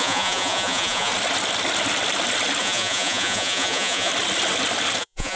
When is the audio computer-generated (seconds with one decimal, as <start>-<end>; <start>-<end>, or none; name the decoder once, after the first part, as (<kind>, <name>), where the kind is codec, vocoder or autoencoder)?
0.0-1.1 (vocoder, Vocos); 2.6-4.1; 5.0-5.4